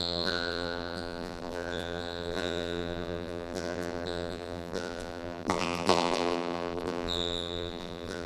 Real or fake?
fake